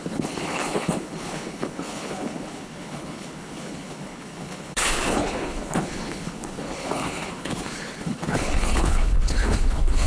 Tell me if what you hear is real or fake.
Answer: fake